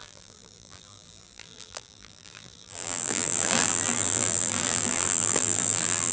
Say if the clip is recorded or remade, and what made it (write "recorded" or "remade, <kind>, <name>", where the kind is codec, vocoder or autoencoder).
remade, vocoder, BigVGAN v2